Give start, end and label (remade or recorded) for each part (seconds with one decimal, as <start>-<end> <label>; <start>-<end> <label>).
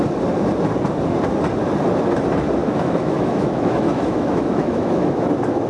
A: 0.0-2.6 recorded; 2.6-5.3 remade; 5.3-5.7 recorded